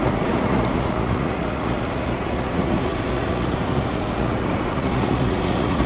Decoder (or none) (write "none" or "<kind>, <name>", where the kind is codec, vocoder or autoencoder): vocoder, Vocos